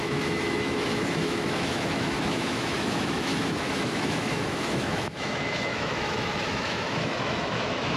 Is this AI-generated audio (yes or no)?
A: yes